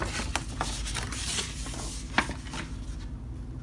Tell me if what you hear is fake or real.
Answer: real